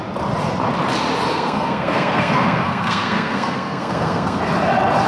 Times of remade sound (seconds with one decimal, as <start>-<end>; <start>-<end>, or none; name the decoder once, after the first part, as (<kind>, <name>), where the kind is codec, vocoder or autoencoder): 1.3-4.4 (codec, SNAC)